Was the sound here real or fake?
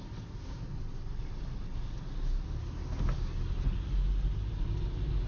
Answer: real